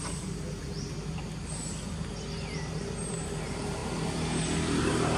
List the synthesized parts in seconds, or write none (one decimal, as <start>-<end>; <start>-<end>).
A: 0.0-0.6; 3.0-3.8; 4.8-5.2